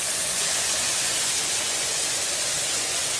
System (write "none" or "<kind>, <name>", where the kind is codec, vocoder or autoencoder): vocoder, Vocos